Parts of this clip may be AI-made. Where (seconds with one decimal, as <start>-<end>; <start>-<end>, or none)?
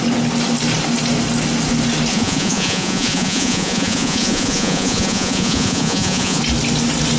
2.1-6.4